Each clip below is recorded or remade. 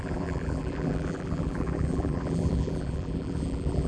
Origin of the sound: remade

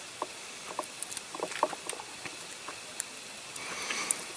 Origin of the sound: recorded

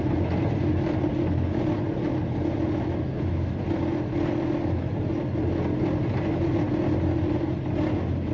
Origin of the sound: recorded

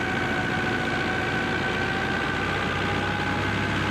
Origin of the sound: recorded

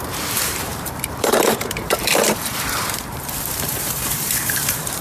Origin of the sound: remade